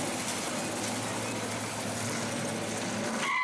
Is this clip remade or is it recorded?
recorded